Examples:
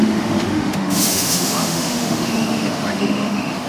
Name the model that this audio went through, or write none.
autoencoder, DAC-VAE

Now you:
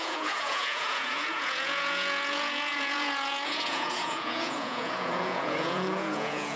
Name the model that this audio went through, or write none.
vocoder, Vocos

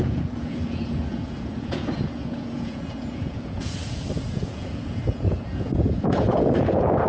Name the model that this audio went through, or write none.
vocoder, Vocos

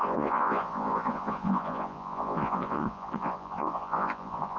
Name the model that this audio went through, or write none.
vocoder, Vocos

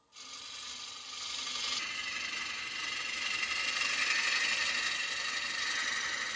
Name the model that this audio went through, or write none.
none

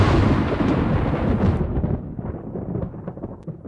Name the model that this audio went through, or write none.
none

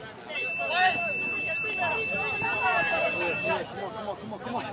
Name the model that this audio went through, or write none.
none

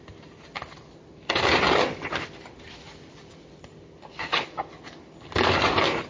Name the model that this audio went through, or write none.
none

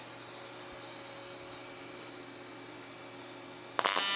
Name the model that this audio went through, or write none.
none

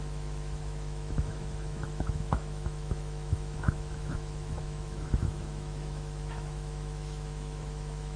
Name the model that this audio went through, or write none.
autoencoder, DAC-VAE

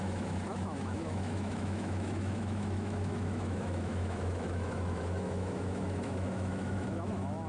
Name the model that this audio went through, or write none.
autoencoder, DAC-VAE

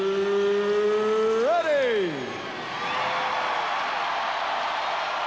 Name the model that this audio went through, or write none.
none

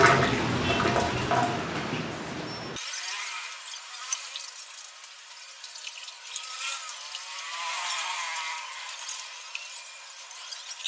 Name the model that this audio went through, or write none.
none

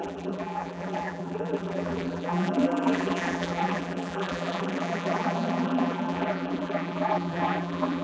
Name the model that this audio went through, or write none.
vocoder, BigVGAN v2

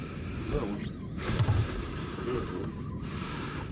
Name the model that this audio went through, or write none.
vocoder, BigVGAN v2